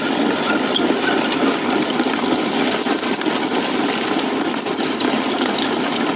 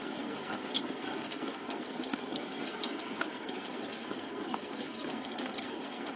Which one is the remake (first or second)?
second